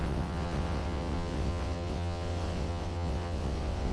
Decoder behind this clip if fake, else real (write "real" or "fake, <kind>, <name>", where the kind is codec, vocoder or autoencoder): fake, vocoder, WaveNeXt